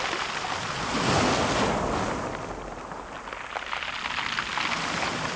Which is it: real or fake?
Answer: real